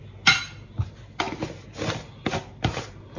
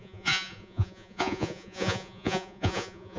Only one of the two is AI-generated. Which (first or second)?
second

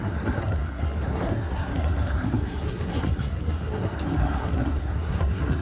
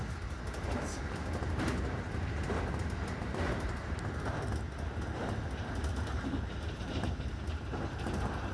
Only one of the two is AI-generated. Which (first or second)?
first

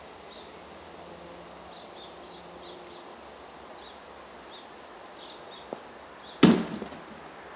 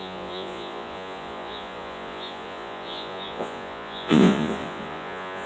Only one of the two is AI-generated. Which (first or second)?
second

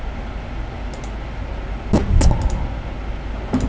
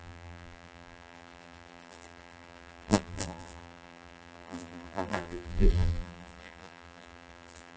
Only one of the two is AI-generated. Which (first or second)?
second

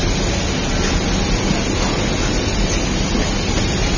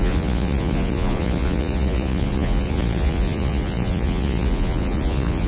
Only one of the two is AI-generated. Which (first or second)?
second